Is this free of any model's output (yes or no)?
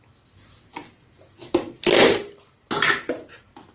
yes